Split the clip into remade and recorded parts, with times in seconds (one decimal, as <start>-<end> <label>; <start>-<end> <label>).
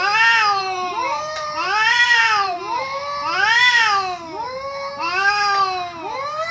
0.0-0.6 recorded; 0.6-2.8 remade; 2.8-6.5 recorded